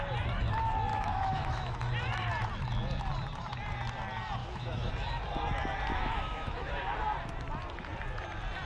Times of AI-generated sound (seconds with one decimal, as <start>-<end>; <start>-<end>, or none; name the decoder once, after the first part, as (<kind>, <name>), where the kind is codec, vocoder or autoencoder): 0.9-1.8 (autoencoder, DAC-VAE); 4.4-4.9; 5.9-6.7